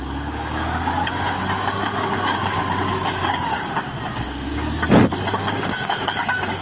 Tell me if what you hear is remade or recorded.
remade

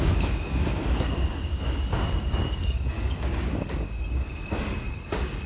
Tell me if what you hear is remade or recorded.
remade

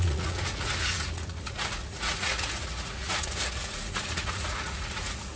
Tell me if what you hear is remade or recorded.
remade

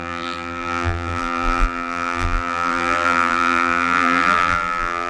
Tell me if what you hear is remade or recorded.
remade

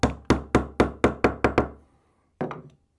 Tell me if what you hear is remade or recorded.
recorded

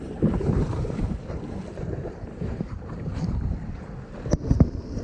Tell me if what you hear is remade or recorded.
remade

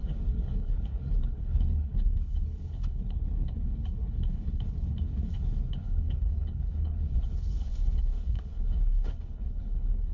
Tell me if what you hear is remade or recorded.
remade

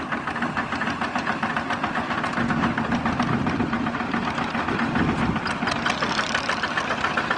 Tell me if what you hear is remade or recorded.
recorded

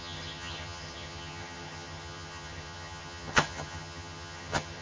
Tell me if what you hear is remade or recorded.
remade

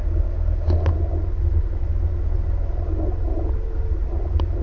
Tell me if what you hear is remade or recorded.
recorded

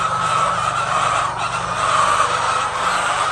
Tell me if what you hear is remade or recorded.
remade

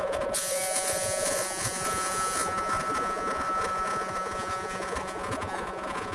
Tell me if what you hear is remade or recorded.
remade